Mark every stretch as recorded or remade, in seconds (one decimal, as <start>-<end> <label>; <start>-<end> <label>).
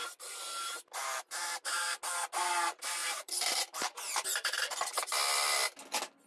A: 0.0-1.4 recorded; 1.4-2.0 remade; 2.0-3.0 recorded; 3.0-5.1 remade; 5.1-6.3 recorded